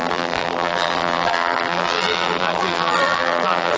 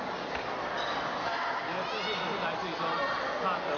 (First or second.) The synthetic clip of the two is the first